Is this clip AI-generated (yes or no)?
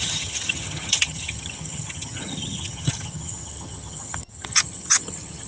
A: yes